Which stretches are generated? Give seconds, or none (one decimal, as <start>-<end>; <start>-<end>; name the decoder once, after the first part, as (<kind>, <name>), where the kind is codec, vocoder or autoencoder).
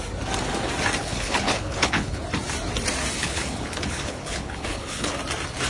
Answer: 1.0-2.2 (codec, HILCodec); 3.2-5.1